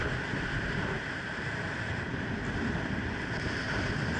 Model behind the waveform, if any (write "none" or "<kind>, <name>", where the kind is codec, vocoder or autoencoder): none